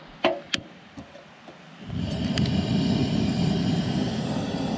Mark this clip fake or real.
real